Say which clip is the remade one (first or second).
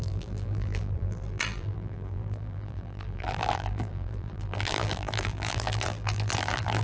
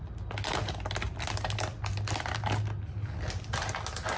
first